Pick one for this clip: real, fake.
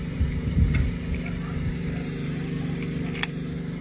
real